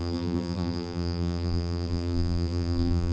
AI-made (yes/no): yes